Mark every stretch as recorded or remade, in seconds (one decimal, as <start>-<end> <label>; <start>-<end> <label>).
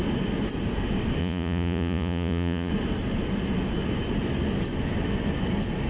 0.0-1.2 recorded; 1.2-2.7 remade; 2.7-5.9 recorded